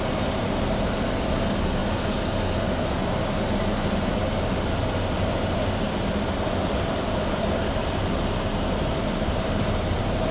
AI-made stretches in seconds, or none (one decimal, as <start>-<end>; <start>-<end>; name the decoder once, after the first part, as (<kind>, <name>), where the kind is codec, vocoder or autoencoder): 0.0-1.8 (vocoder, BigVGAN v2); 4.1-10.3